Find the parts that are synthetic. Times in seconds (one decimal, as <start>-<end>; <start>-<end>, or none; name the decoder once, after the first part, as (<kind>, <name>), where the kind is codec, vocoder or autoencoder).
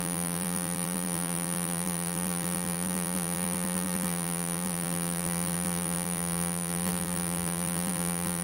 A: 0.0-8.4 (vocoder, BigVGAN v2)